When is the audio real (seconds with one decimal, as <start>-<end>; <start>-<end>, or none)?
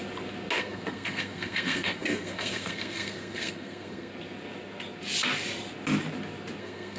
0.0-0.6; 4.1-6.6